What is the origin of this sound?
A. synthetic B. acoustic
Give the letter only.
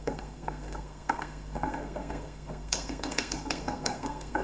A